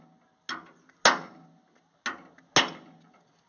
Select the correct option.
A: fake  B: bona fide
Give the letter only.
B